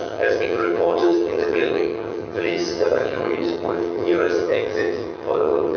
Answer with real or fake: fake